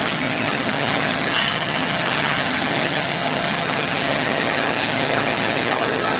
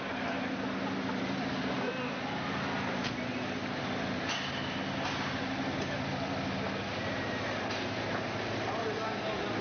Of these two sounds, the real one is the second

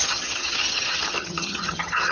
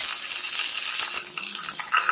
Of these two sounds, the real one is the second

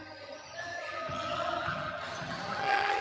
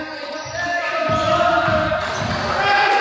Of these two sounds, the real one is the second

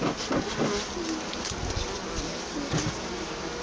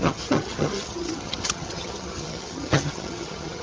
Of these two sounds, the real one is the first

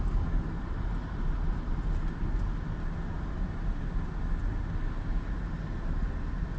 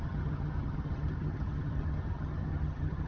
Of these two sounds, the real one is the first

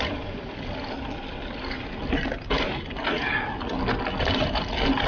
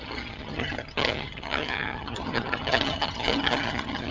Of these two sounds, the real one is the first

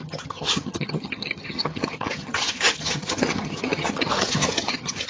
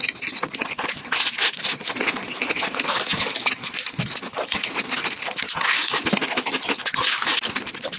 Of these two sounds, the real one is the second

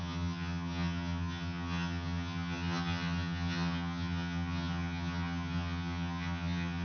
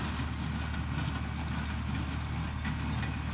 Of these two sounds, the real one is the second